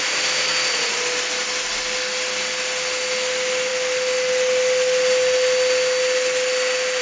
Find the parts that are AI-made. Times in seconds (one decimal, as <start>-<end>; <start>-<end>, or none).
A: none